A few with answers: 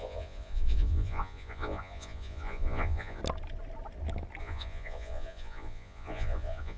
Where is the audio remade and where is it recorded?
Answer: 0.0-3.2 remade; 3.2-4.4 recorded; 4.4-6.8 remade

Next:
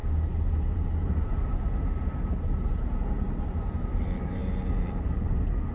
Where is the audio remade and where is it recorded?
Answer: 0.0-5.7 recorded

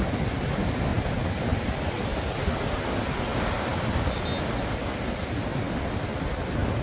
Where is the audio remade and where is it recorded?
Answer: 0.0-6.8 recorded

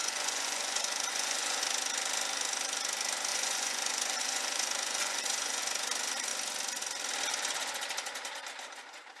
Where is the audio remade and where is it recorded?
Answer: 0.0-1.6 remade; 1.6-3.3 recorded; 3.3-5.6 remade; 5.6-9.2 recorded

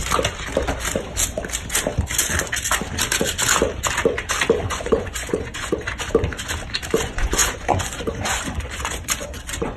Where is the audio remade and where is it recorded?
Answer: 0.0-4.7 recorded; 4.7-6.1 remade; 6.1-7.0 recorded; 7.0-9.8 remade

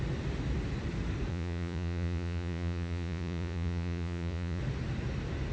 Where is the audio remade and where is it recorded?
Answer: 0.0-1.3 recorded; 1.3-4.6 remade; 4.6-5.5 recorded